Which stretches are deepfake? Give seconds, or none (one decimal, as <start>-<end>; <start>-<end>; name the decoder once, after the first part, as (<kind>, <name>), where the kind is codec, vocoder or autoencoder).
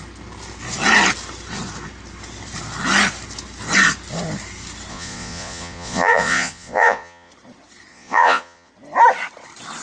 4.9-7.3 (vocoder, Vocos); 7.9-8.7